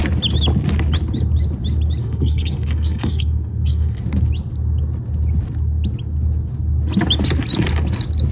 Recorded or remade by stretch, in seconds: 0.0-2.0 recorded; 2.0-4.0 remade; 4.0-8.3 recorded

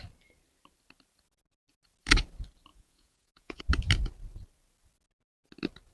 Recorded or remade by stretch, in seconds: 0.0-2.7 recorded; 2.7-3.6 remade; 3.6-5.9 recorded

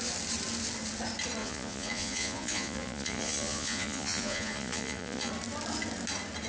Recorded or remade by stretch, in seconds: 0.0-1.4 recorded; 1.4-5.3 remade; 5.3-6.5 recorded